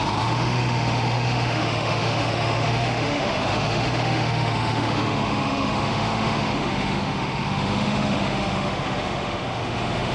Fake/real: fake